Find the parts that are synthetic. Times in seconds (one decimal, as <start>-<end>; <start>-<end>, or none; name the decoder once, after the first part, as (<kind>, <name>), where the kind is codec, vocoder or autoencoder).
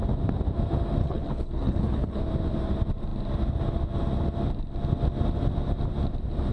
1.0-2.2 (codec, HILCodec)